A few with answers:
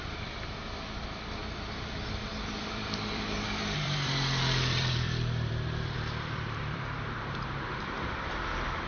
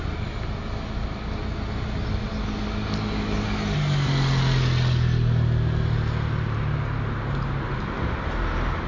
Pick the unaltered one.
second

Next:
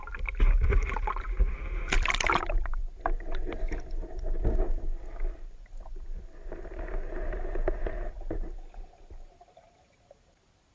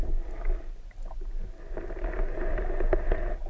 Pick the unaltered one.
second